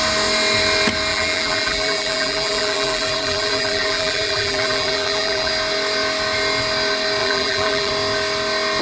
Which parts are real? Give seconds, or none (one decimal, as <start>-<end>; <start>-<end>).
0.0-1.1; 5.5-7.2; 7.9-8.8